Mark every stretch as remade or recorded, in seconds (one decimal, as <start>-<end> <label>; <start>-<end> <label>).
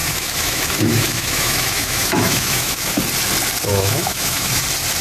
0.0-3.0 remade; 3.0-3.7 recorded; 3.7-4.6 remade; 4.6-5.0 recorded